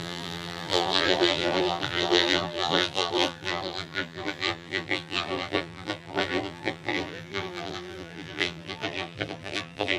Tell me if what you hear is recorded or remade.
remade